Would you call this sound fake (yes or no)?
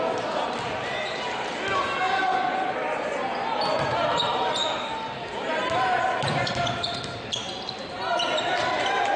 no